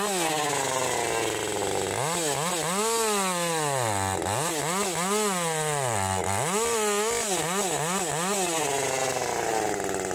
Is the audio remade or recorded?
recorded